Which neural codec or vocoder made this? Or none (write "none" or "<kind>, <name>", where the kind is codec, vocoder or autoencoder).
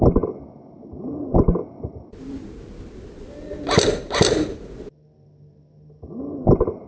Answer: none